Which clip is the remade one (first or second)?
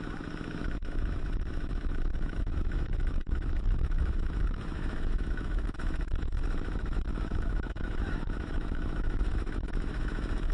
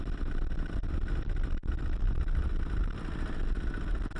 first